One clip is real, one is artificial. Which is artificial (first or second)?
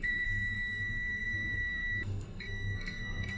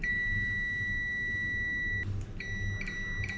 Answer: first